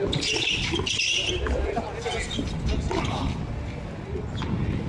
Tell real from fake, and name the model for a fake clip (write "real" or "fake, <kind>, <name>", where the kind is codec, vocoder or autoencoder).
real